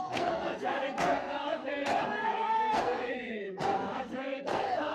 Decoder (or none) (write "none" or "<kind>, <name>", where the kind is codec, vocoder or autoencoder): codec, SNAC